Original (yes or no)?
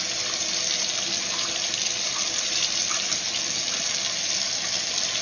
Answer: yes